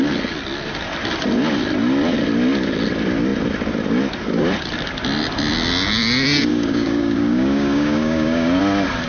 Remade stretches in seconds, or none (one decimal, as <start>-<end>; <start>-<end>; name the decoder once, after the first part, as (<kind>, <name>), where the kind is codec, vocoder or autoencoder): 6.5-8.6 (codec, DAC)

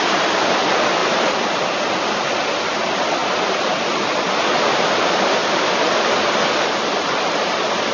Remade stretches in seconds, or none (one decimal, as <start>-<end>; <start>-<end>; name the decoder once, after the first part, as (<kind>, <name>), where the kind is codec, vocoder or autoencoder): none